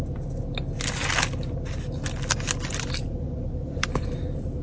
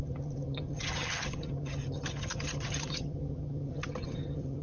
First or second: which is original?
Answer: first